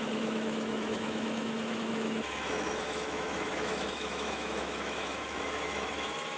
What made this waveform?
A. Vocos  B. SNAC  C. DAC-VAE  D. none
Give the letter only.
C